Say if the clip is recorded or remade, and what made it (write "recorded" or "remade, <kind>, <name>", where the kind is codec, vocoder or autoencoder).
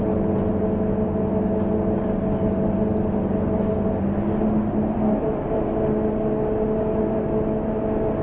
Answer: recorded